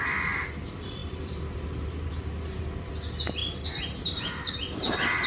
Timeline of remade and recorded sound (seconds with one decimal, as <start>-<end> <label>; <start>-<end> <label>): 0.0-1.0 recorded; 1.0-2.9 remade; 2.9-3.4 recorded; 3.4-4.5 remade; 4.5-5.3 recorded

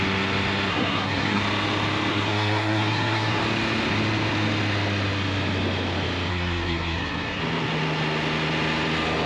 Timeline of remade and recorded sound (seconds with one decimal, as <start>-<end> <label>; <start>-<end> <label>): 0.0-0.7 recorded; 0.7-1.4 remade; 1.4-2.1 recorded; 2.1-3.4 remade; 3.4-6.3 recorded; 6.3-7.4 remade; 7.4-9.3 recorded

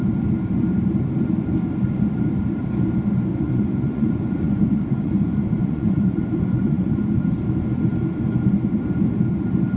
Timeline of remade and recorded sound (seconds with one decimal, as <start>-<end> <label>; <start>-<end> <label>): 0.0-3.3 recorded; 3.3-7.0 remade; 7.0-9.8 recorded